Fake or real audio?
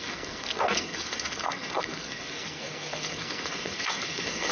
fake